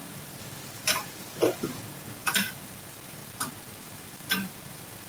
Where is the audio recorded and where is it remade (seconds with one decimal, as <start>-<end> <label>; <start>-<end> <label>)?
0.0-5.1 remade